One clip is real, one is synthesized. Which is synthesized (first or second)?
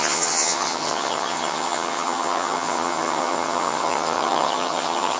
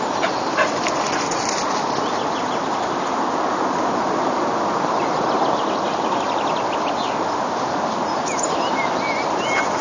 first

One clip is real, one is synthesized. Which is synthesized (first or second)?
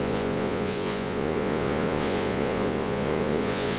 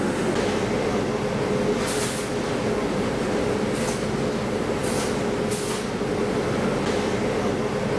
first